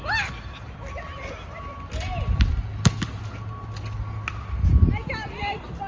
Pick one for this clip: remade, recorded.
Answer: recorded